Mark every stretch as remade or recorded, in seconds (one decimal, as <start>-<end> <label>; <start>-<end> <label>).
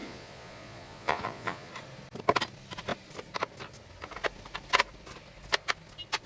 0.0-1.7 remade; 1.7-6.3 recorded